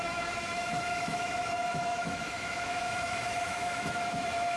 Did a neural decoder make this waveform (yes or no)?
yes